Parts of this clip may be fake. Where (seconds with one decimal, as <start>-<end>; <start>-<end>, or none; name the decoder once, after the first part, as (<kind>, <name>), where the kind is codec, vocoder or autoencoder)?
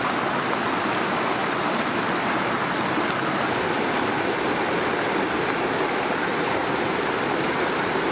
1.4-1.9 (vocoder, BigVGAN v2); 6.6-7.3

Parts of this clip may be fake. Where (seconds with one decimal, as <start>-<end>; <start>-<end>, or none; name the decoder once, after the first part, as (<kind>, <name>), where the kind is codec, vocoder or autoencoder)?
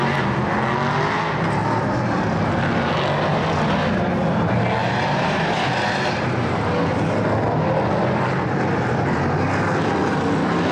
4.8-6.6 (vocoder, BigVGAN v2)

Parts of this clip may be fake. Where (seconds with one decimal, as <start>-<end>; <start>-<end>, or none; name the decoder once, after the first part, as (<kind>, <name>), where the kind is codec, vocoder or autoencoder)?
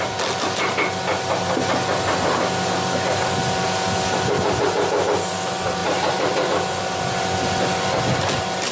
none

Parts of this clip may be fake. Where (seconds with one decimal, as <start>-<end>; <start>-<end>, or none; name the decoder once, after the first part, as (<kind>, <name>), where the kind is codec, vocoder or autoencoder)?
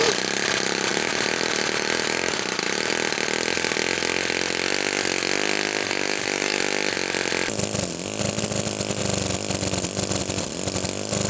0.9-2.9 (vocoder, BigVGAN v2); 5.8-6.6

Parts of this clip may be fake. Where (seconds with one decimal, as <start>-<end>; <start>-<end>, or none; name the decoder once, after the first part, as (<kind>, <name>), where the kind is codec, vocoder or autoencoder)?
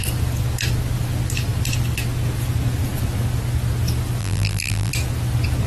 4.2-4.9 (vocoder, BigVGAN v2)